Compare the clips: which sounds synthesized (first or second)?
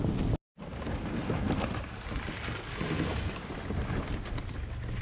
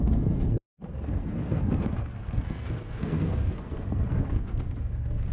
second